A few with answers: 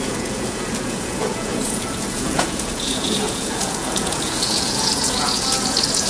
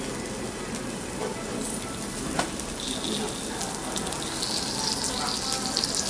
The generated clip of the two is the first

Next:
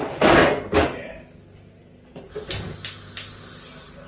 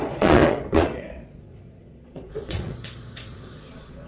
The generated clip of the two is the second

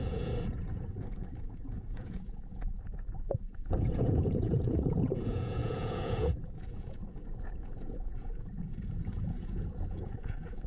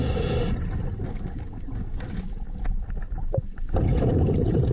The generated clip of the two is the first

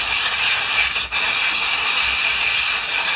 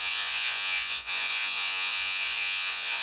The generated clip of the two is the second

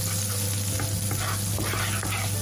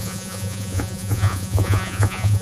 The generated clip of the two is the second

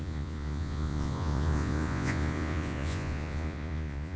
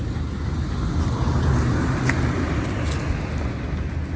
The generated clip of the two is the first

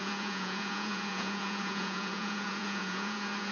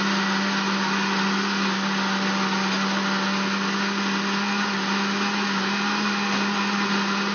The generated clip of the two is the first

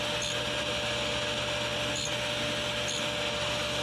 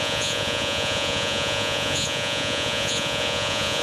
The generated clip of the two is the second